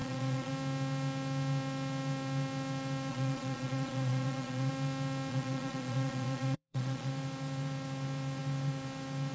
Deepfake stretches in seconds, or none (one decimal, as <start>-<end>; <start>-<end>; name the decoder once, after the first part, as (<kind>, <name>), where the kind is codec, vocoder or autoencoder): 0.0-0.5 (vocoder, Vocos); 3.1-4.7; 5.3-7.1